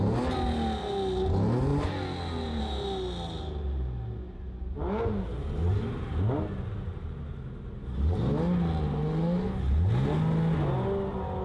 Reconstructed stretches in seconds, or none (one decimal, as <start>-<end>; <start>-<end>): none